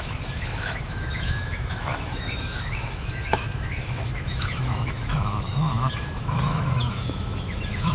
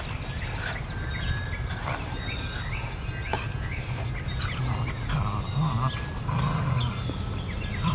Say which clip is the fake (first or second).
first